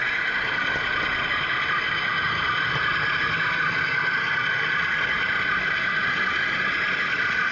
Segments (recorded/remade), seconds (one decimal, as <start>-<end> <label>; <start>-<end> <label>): 0.0-7.5 recorded